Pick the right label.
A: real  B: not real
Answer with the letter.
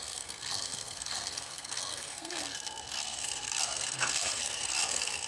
B